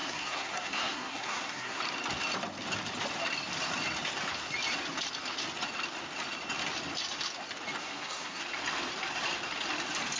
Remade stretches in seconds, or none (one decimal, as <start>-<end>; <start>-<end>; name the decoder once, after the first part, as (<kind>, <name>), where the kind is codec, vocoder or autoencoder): 0.0-1.8 (codec, SNAC); 7.8-8.4